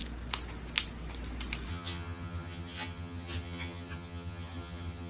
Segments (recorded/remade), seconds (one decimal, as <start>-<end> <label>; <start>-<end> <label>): 0.0-1.7 recorded; 1.7-5.1 remade